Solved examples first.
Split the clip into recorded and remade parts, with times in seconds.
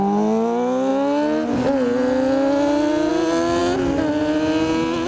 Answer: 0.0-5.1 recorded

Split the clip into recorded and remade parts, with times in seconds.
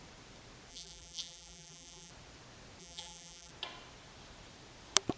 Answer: 0.0-0.7 recorded; 0.7-2.1 remade; 2.1-2.8 recorded; 2.8-3.5 remade; 3.5-5.2 recorded